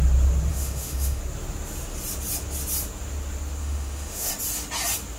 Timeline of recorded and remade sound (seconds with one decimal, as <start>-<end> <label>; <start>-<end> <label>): 0.0-0.5 recorded; 0.5-1.2 remade; 1.2-3.6 recorded; 3.6-4.3 remade; 4.3-5.2 recorded